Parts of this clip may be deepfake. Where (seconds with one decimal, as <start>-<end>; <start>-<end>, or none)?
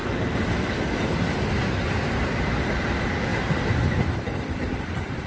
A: none